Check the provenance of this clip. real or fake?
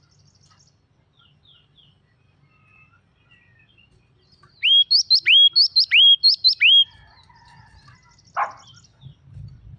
real